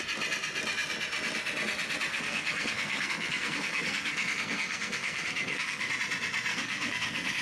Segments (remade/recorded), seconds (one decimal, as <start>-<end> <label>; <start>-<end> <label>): 0.0-2.1 recorded; 2.1-5.9 remade; 5.9-6.5 recorded; 6.5-7.4 remade